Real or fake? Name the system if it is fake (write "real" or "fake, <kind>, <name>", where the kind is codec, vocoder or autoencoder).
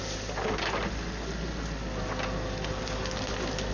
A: real